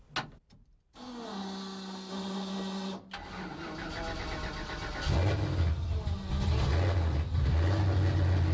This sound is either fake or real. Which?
real